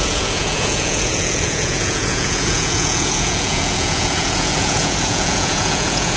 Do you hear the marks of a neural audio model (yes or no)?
yes